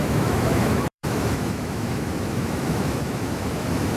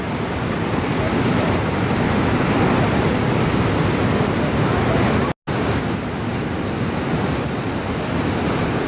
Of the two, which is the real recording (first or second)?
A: second